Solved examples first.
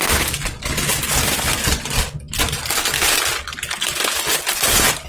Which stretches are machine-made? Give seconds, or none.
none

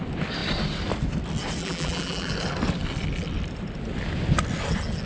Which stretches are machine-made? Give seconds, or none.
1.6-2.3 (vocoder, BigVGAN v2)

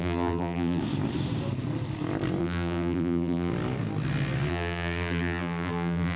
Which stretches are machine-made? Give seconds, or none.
0.0-0.8 (vocoder, BigVGAN v2); 2.4-3.5; 4.5-6.2

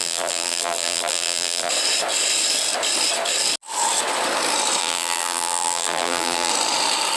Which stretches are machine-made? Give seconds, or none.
0.0-1.7 (vocoder, BigVGAN v2); 4.8-6.5

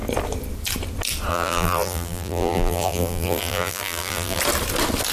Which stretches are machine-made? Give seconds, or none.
1.3-4.4 (vocoder, BigVGAN v2)

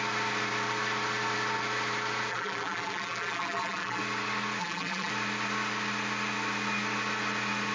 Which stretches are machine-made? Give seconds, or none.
2.3-4.0 (vocoder, BigVGAN v2); 4.6-5.1

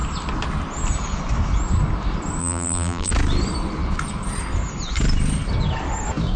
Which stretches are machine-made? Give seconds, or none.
2.4-3.1 (vocoder, BigVGAN v2)

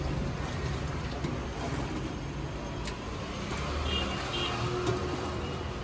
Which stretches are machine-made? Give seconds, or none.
4.9-5.8 (vocoder, BigVGAN v2)